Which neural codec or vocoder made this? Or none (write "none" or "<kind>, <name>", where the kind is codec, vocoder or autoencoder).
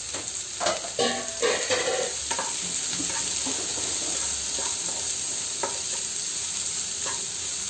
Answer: none